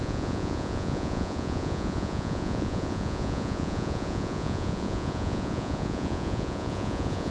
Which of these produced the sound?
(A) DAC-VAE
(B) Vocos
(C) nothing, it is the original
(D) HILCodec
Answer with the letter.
B